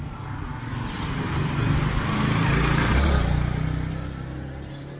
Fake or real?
real